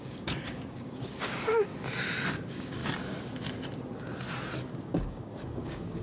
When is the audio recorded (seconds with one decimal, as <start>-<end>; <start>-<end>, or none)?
1.7-2.3; 2.8-4.8